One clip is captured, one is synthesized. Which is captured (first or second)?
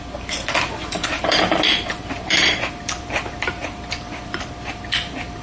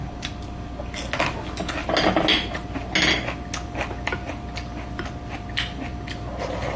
second